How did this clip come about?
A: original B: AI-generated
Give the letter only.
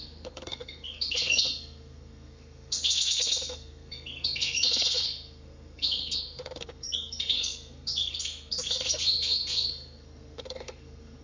B